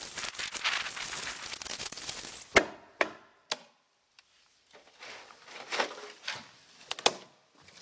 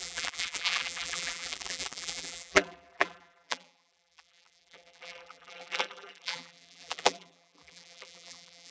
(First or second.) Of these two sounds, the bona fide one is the first